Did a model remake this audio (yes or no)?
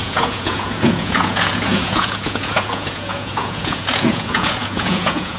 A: yes